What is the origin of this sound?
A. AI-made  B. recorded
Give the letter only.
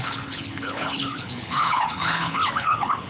A